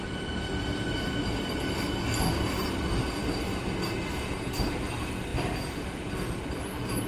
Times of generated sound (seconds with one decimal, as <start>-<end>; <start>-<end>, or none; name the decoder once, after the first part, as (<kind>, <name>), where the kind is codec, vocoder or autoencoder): 3.2-3.8 (vocoder, BigVGAN v2); 5.3-6.1